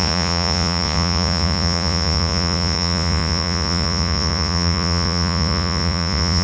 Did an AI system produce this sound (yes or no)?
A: yes